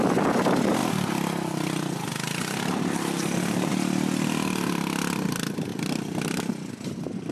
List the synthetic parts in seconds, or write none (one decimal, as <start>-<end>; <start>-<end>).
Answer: none